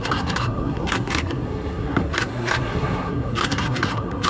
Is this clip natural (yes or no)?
no